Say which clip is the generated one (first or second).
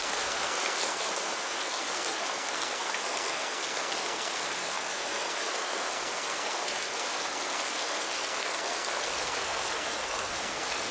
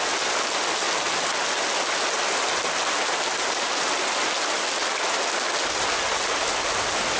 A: first